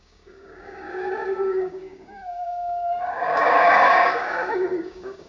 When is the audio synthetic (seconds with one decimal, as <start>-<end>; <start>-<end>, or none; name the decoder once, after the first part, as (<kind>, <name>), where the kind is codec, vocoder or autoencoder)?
0.0-5.3 (codec, DAC)